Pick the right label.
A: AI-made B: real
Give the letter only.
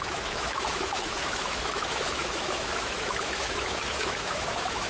A